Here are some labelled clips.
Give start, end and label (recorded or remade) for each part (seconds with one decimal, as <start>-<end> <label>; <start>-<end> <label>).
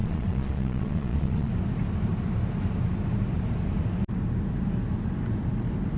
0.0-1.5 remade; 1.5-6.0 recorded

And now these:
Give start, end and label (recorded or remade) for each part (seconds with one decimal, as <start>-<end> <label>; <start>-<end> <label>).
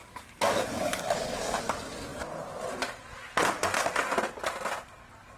0.0-1.6 remade; 1.6-5.4 recorded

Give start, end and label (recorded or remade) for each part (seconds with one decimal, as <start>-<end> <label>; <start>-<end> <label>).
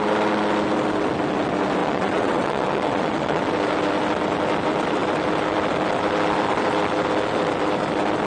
0.0-1.8 recorded; 1.8-3.4 remade; 3.4-8.3 recorded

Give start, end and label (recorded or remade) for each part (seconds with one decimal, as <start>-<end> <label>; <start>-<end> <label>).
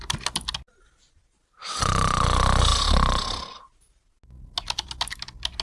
0.0-5.6 recorded